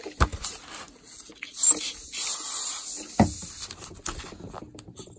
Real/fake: real